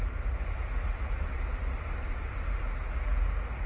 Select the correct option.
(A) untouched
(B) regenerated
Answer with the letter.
A